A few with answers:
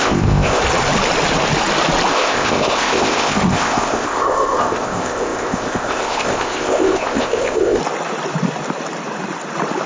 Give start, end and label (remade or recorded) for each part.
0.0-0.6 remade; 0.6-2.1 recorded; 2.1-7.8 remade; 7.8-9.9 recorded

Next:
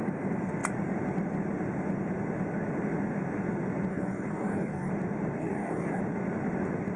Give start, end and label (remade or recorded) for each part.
0.0-3.9 recorded; 3.9-4.9 remade; 4.9-5.4 recorded; 5.4-6.0 remade; 6.0-7.0 recorded